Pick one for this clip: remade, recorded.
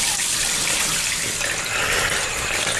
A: recorded